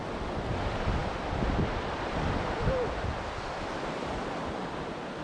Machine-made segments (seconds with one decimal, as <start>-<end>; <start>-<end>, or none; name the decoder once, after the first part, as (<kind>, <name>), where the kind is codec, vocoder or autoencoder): none